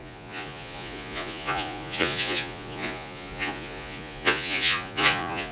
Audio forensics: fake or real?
fake